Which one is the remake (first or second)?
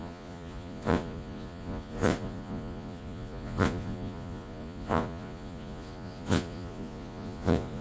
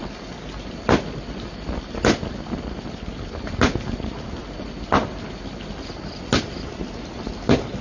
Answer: first